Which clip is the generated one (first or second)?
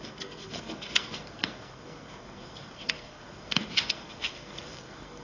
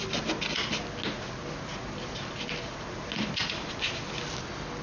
first